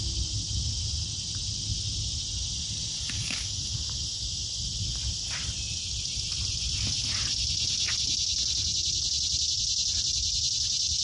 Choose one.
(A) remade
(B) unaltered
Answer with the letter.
B